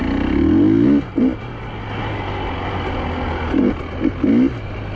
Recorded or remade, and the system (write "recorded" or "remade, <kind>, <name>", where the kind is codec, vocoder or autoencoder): recorded